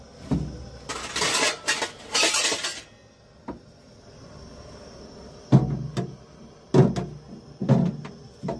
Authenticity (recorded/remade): recorded